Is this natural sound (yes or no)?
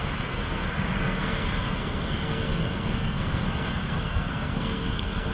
no